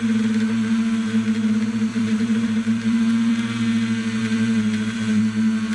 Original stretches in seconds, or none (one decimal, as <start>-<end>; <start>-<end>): 0.0-1.9; 3.3-4.2; 5.2-5.7